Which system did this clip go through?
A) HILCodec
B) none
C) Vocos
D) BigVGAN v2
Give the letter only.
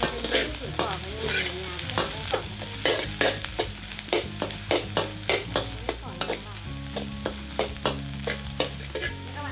B